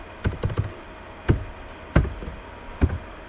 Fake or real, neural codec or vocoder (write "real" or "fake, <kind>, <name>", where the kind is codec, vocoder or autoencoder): fake, vocoder, BigVGAN v2